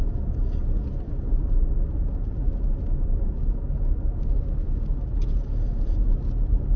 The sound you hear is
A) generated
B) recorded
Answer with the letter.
B